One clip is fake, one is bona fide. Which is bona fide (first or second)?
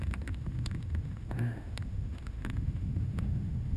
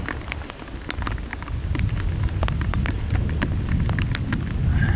second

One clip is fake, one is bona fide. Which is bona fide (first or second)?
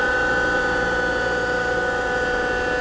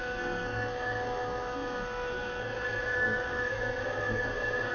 first